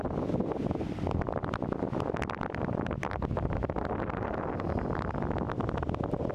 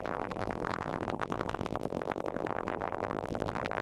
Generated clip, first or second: second